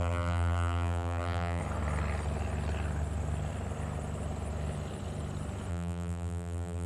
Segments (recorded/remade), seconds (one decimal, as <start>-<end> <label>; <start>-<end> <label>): 0.0-1.6 remade; 1.6-5.7 recorded; 5.7-6.9 remade